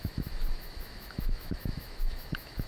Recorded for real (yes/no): no